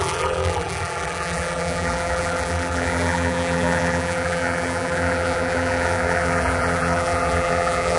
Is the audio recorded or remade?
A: remade